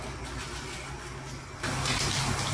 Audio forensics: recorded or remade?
recorded